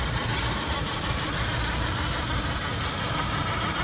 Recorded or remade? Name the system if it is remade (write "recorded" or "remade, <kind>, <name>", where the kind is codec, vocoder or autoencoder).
recorded